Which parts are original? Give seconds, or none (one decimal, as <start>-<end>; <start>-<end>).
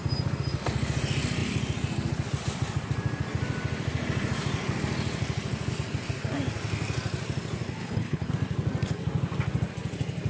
0.0-7.8; 8.3-10.3